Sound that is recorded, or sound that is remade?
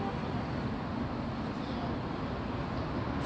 recorded